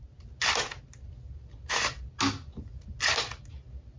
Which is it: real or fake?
real